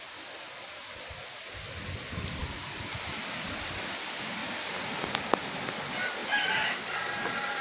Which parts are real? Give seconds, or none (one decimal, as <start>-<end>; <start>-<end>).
0.0-7.6